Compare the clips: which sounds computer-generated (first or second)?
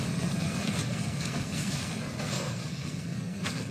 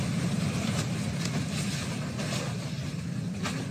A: first